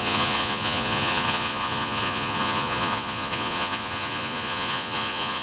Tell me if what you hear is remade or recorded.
remade